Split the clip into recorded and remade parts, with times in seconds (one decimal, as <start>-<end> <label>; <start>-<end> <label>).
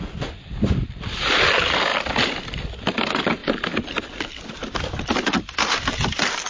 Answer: 0.0-6.5 recorded